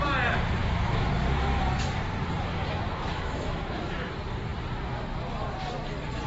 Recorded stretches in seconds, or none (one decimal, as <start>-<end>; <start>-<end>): 0.0-0.6; 1.1-2.5; 4.1-6.3